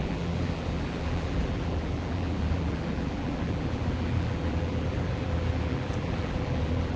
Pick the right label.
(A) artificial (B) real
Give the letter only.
A